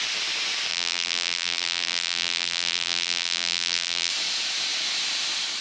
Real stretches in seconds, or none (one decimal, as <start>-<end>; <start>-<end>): 0.0-0.7; 4.1-5.6